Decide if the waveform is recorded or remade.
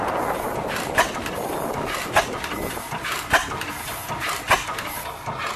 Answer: recorded